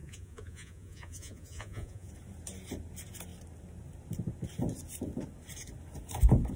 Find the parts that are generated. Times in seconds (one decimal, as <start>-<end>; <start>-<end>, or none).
0.0-2.1